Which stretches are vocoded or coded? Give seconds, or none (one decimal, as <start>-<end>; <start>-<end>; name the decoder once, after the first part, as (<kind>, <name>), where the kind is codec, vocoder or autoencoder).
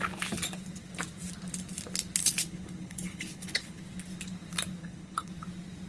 2.2-3.8 (codec, HILCodec); 4.8-5.3